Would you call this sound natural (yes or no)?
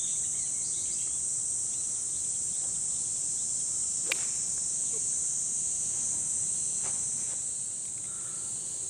yes